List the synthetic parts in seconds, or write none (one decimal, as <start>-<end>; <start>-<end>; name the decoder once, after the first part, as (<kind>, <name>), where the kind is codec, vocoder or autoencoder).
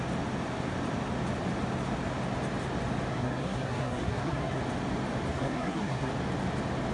3.1-4.6 (codec, SNAC); 5.3-6.1